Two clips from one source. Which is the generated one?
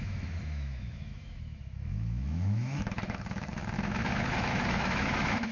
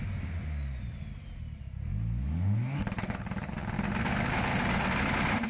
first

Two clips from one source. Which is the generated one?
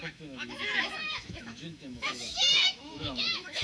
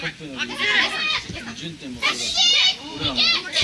first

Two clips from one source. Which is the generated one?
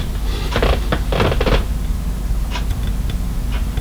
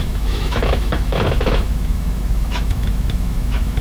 second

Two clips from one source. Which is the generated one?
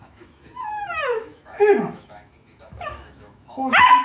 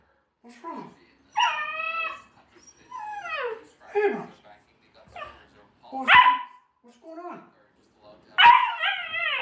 first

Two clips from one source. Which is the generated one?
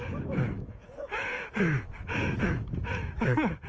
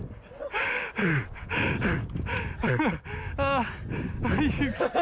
first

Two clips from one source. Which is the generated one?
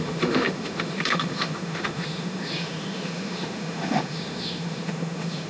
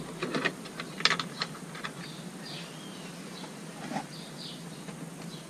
first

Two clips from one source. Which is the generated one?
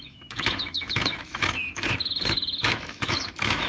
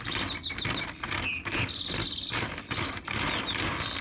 first